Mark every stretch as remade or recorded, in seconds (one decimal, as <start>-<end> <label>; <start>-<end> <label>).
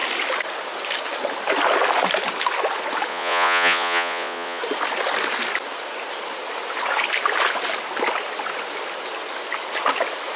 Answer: 0.0-3.1 recorded; 3.1-4.6 remade; 4.6-10.4 recorded